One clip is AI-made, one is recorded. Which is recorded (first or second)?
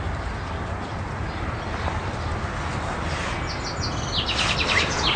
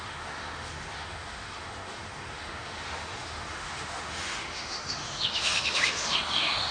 first